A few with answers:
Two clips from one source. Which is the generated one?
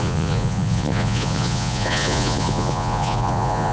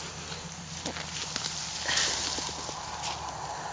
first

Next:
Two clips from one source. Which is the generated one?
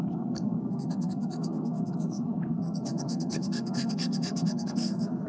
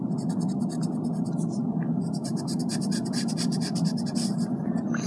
first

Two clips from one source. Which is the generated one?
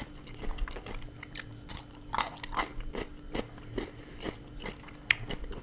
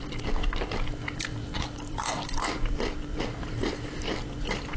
second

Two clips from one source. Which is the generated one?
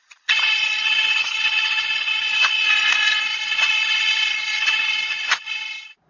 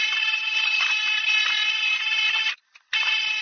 first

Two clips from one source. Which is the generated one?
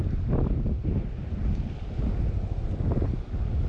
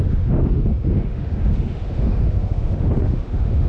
second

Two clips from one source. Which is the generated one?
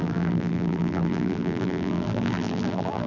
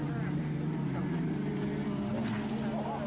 first